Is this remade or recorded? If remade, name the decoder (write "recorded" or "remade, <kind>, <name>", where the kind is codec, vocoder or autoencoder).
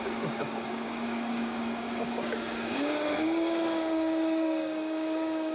remade, codec, DAC